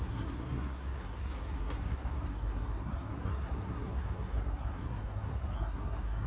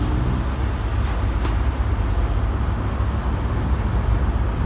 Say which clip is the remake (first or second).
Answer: first